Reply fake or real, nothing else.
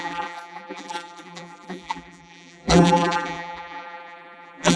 fake